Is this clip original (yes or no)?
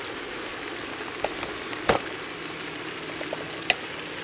yes